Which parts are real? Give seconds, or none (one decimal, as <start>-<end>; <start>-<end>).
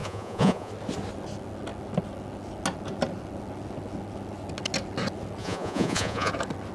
0.7-5.4; 6.3-6.7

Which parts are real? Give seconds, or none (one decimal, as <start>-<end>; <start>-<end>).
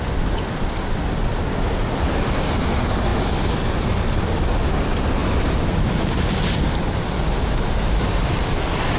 0.0-9.0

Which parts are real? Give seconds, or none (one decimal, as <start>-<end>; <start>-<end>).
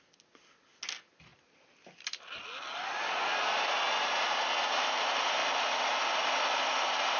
0.0-7.2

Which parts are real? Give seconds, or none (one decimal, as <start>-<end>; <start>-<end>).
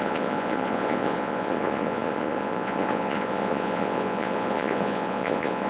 none